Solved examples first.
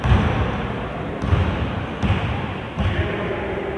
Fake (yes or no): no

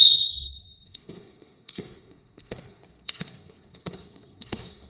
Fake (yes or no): yes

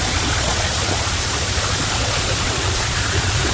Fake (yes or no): yes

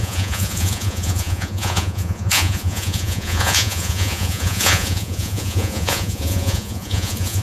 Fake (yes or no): yes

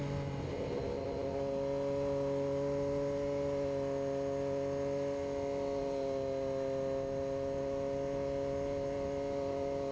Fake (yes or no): no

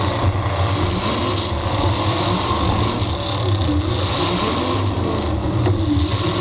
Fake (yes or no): no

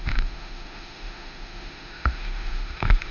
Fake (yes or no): yes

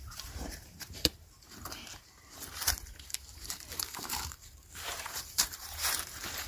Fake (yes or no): yes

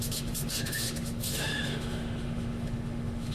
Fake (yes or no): yes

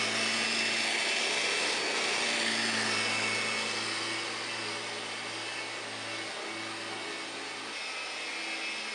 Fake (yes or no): no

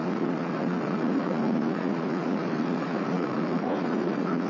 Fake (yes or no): yes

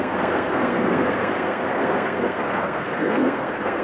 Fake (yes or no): yes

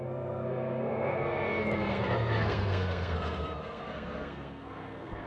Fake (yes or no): yes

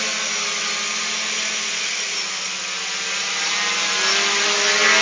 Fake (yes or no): no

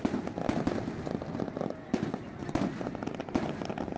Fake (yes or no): no